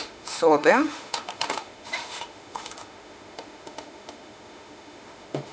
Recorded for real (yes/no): no